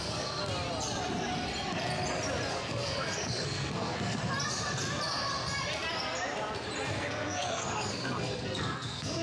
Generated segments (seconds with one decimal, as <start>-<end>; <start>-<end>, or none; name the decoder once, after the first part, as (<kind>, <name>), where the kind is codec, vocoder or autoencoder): 0.0-0.4 (codec, SNAC); 2.5-4.2; 6.9-9.2